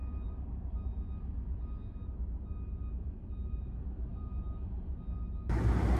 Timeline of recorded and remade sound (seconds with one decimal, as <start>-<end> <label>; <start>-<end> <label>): 0.0-4.1 recorded; 4.1-4.9 remade; 4.9-6.0 recorded